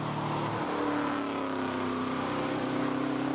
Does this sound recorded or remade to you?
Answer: recorded